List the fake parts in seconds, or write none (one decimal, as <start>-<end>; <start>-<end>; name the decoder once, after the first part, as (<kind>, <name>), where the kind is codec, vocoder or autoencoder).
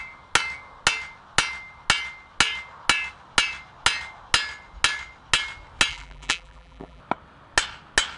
5.9-7.0 (vocoder, BigVGAN v2)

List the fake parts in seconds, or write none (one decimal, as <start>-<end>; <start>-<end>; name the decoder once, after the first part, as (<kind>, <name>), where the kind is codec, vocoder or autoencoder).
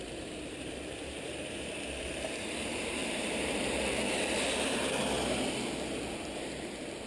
0.0-5.0 (vocoder, BigVGAN v2)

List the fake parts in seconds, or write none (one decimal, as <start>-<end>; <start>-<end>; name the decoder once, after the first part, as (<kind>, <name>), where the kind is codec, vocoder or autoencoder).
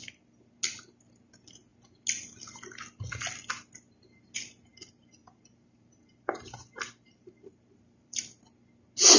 4.7-8.2 (vocoder, BigVGAN v2)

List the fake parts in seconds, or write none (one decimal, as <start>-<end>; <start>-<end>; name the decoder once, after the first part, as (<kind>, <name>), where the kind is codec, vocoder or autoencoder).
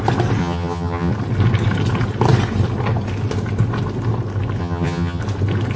0.4-1.1 (vocoder, HiFi-GAN); 4.6-5.2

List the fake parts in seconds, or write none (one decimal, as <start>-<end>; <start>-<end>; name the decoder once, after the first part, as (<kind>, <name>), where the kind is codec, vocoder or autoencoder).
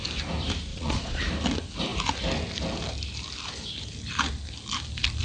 0.7-1.2 (vocoder, Vocos)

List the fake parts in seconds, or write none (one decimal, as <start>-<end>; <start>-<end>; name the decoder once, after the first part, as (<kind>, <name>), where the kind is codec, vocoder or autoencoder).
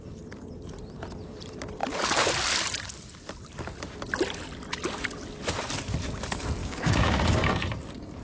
6.6-7.5 (codec, DAC)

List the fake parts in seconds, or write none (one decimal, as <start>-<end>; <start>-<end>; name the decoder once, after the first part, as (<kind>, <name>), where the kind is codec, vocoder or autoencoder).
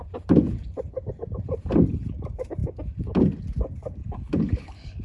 4.0-5.0 (codec, HILCodec)